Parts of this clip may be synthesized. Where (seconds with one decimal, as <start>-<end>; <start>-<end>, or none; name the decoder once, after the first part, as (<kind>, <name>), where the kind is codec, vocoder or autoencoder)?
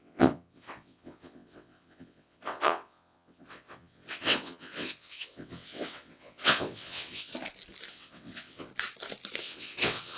0.0-7.3 (vocoder, WaveNeXt); 7.9-8.7; 9.4-10.2